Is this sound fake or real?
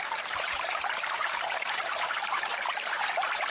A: fake